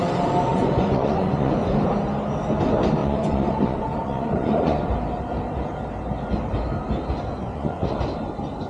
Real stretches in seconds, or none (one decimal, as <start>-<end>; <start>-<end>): 0.0-0.5; 1.8-3.0; 4.8-7.3; 8.0-8.7